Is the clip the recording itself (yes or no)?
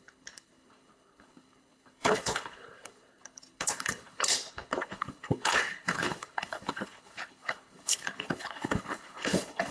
no